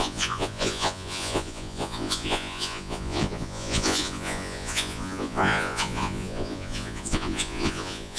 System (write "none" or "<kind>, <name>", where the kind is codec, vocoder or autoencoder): vocoder, Vocos